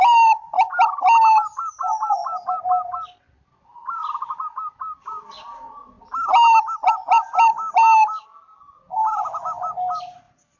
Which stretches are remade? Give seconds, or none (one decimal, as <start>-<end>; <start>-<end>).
none

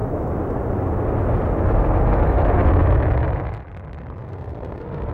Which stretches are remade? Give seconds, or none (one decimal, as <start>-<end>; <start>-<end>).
4.2-5.1

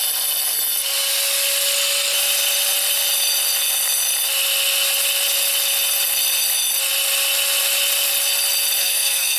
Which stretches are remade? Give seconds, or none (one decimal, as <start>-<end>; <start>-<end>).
8.8-9.4

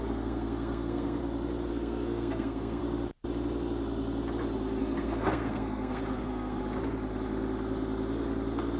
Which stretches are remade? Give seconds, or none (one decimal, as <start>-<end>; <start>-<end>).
0.0-1.2; 1.7-2.8; 4.8-6.6

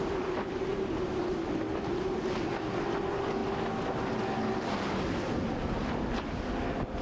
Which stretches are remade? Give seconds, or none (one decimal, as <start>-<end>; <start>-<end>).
none

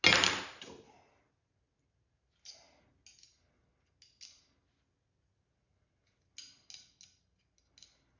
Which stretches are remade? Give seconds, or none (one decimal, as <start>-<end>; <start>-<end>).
none

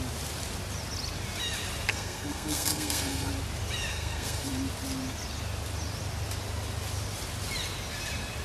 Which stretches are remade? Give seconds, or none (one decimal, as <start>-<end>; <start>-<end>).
1.9-3.3; 3.9-4.5